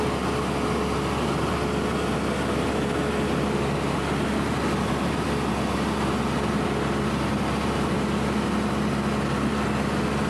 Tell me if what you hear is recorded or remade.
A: recorded